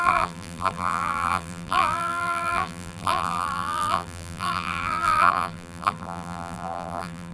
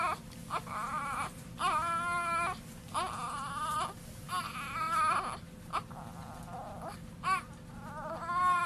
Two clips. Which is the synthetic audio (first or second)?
first